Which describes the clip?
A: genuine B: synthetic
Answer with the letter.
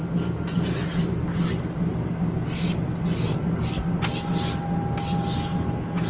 A